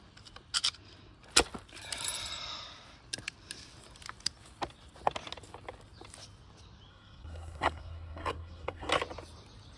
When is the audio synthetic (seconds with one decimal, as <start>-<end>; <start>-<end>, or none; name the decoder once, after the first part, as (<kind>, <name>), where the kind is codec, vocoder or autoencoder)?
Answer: 6.9-8.9 (codec, SNAC)